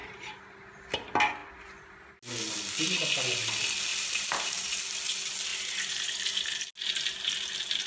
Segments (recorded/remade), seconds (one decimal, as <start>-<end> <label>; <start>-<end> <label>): 0.0-0.8 remade; 0.8-1.4 recorded; 1.4-2.2 remade; 2.2-3.9 recorded; 3.9-4.8 remade; 4.8-5.5 recorded; 5.5-6.0 remade; 6.0-7.9 recorded